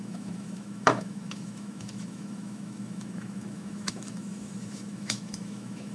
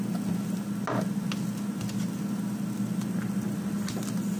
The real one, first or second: second